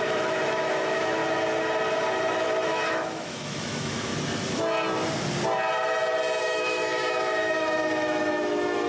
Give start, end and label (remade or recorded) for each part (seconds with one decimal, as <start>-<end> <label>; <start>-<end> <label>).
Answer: 0.0-1.2 remade; 1.2-2.7 recorded; 2.7-4.1 remade; 4.1-6.4 recorded; 6.4-8.9 remade